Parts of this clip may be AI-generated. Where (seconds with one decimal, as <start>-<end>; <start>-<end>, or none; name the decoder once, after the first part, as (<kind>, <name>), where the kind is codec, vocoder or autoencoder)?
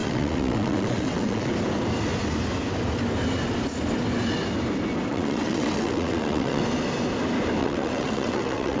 0.0-1.5 (vocoder, WaveNeXt); 5.1-6.6; 7.6-8.8